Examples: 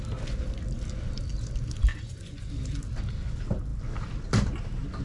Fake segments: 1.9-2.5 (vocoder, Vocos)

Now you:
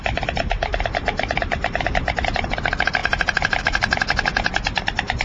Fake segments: none

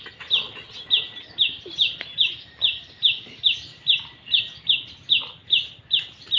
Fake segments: none

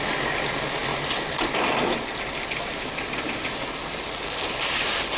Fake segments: 0.9-4.0 (vocoder, BigVGAN v2)